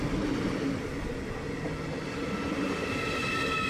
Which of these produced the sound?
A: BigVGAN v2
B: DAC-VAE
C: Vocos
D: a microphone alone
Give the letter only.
D